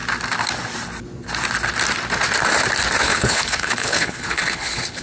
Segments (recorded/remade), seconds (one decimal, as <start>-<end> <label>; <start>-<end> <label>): 0.0-3.0 recorded; 3.0-5.0 remade